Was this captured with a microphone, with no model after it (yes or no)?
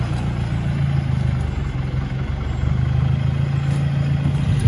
yes